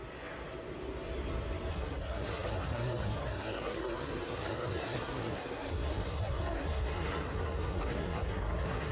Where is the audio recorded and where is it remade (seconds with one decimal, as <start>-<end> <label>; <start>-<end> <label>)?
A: 0.0-1.7 recorded; 1.7-8.9 remade